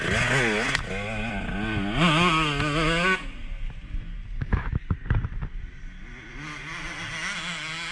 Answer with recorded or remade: recorded